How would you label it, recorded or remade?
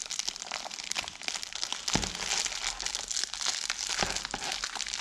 recorded